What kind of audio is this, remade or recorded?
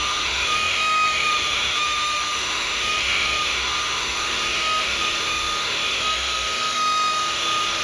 remade